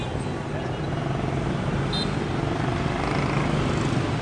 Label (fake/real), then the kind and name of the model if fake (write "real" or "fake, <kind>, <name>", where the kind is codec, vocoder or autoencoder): real